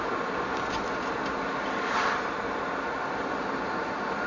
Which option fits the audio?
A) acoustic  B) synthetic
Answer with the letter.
A